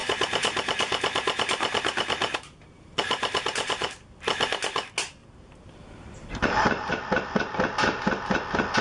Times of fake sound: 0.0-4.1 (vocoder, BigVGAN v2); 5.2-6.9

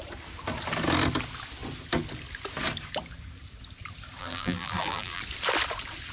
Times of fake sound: 4.2-5.2 (vocoder, BigVGAN v2)

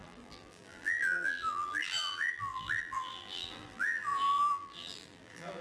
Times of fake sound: 0.0-5.6 (vocoder, BigVGAN v2)

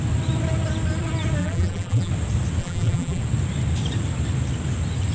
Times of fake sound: 1.4-2.1 (vocoder, BigVGAN v2); 2.6-3.2